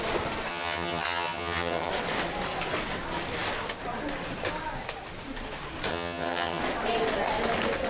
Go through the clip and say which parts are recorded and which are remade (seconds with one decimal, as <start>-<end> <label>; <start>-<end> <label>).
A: 0.0-0.5 recorded; 0.5-1.9 remade; 1.9-5.9 recorded; 5.9-6.6 remade; 6.6-7.9 recorded